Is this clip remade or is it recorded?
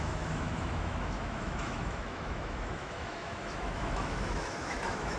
remade